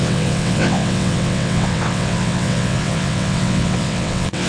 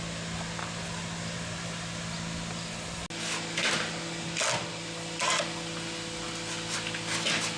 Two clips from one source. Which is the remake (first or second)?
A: first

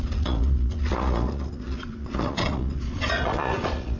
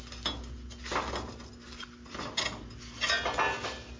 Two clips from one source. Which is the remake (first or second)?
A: first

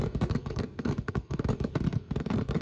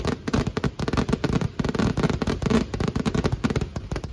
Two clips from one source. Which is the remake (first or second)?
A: first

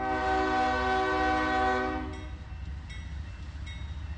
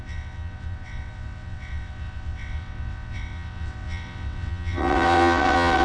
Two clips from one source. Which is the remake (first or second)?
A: second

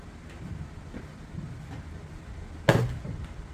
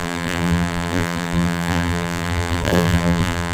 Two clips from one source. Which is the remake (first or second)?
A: second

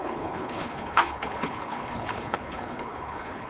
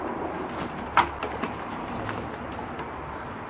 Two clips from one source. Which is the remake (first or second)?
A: first